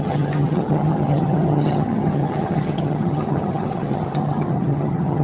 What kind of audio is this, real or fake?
fake